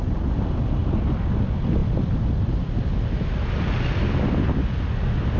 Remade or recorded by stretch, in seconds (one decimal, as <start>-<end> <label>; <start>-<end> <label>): 0.0-5.4 recorded